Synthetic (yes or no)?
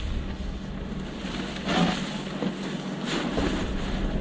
no